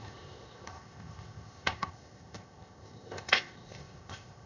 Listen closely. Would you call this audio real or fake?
fake